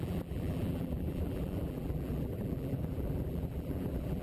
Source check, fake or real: fake